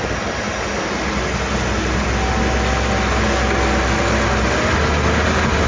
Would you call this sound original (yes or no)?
yes